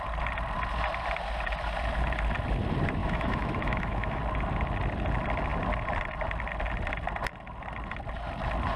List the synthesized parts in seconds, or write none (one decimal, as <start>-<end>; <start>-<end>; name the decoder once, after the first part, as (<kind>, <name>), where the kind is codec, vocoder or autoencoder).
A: 3.0-4.2 (autoencoder, DAC-VAE)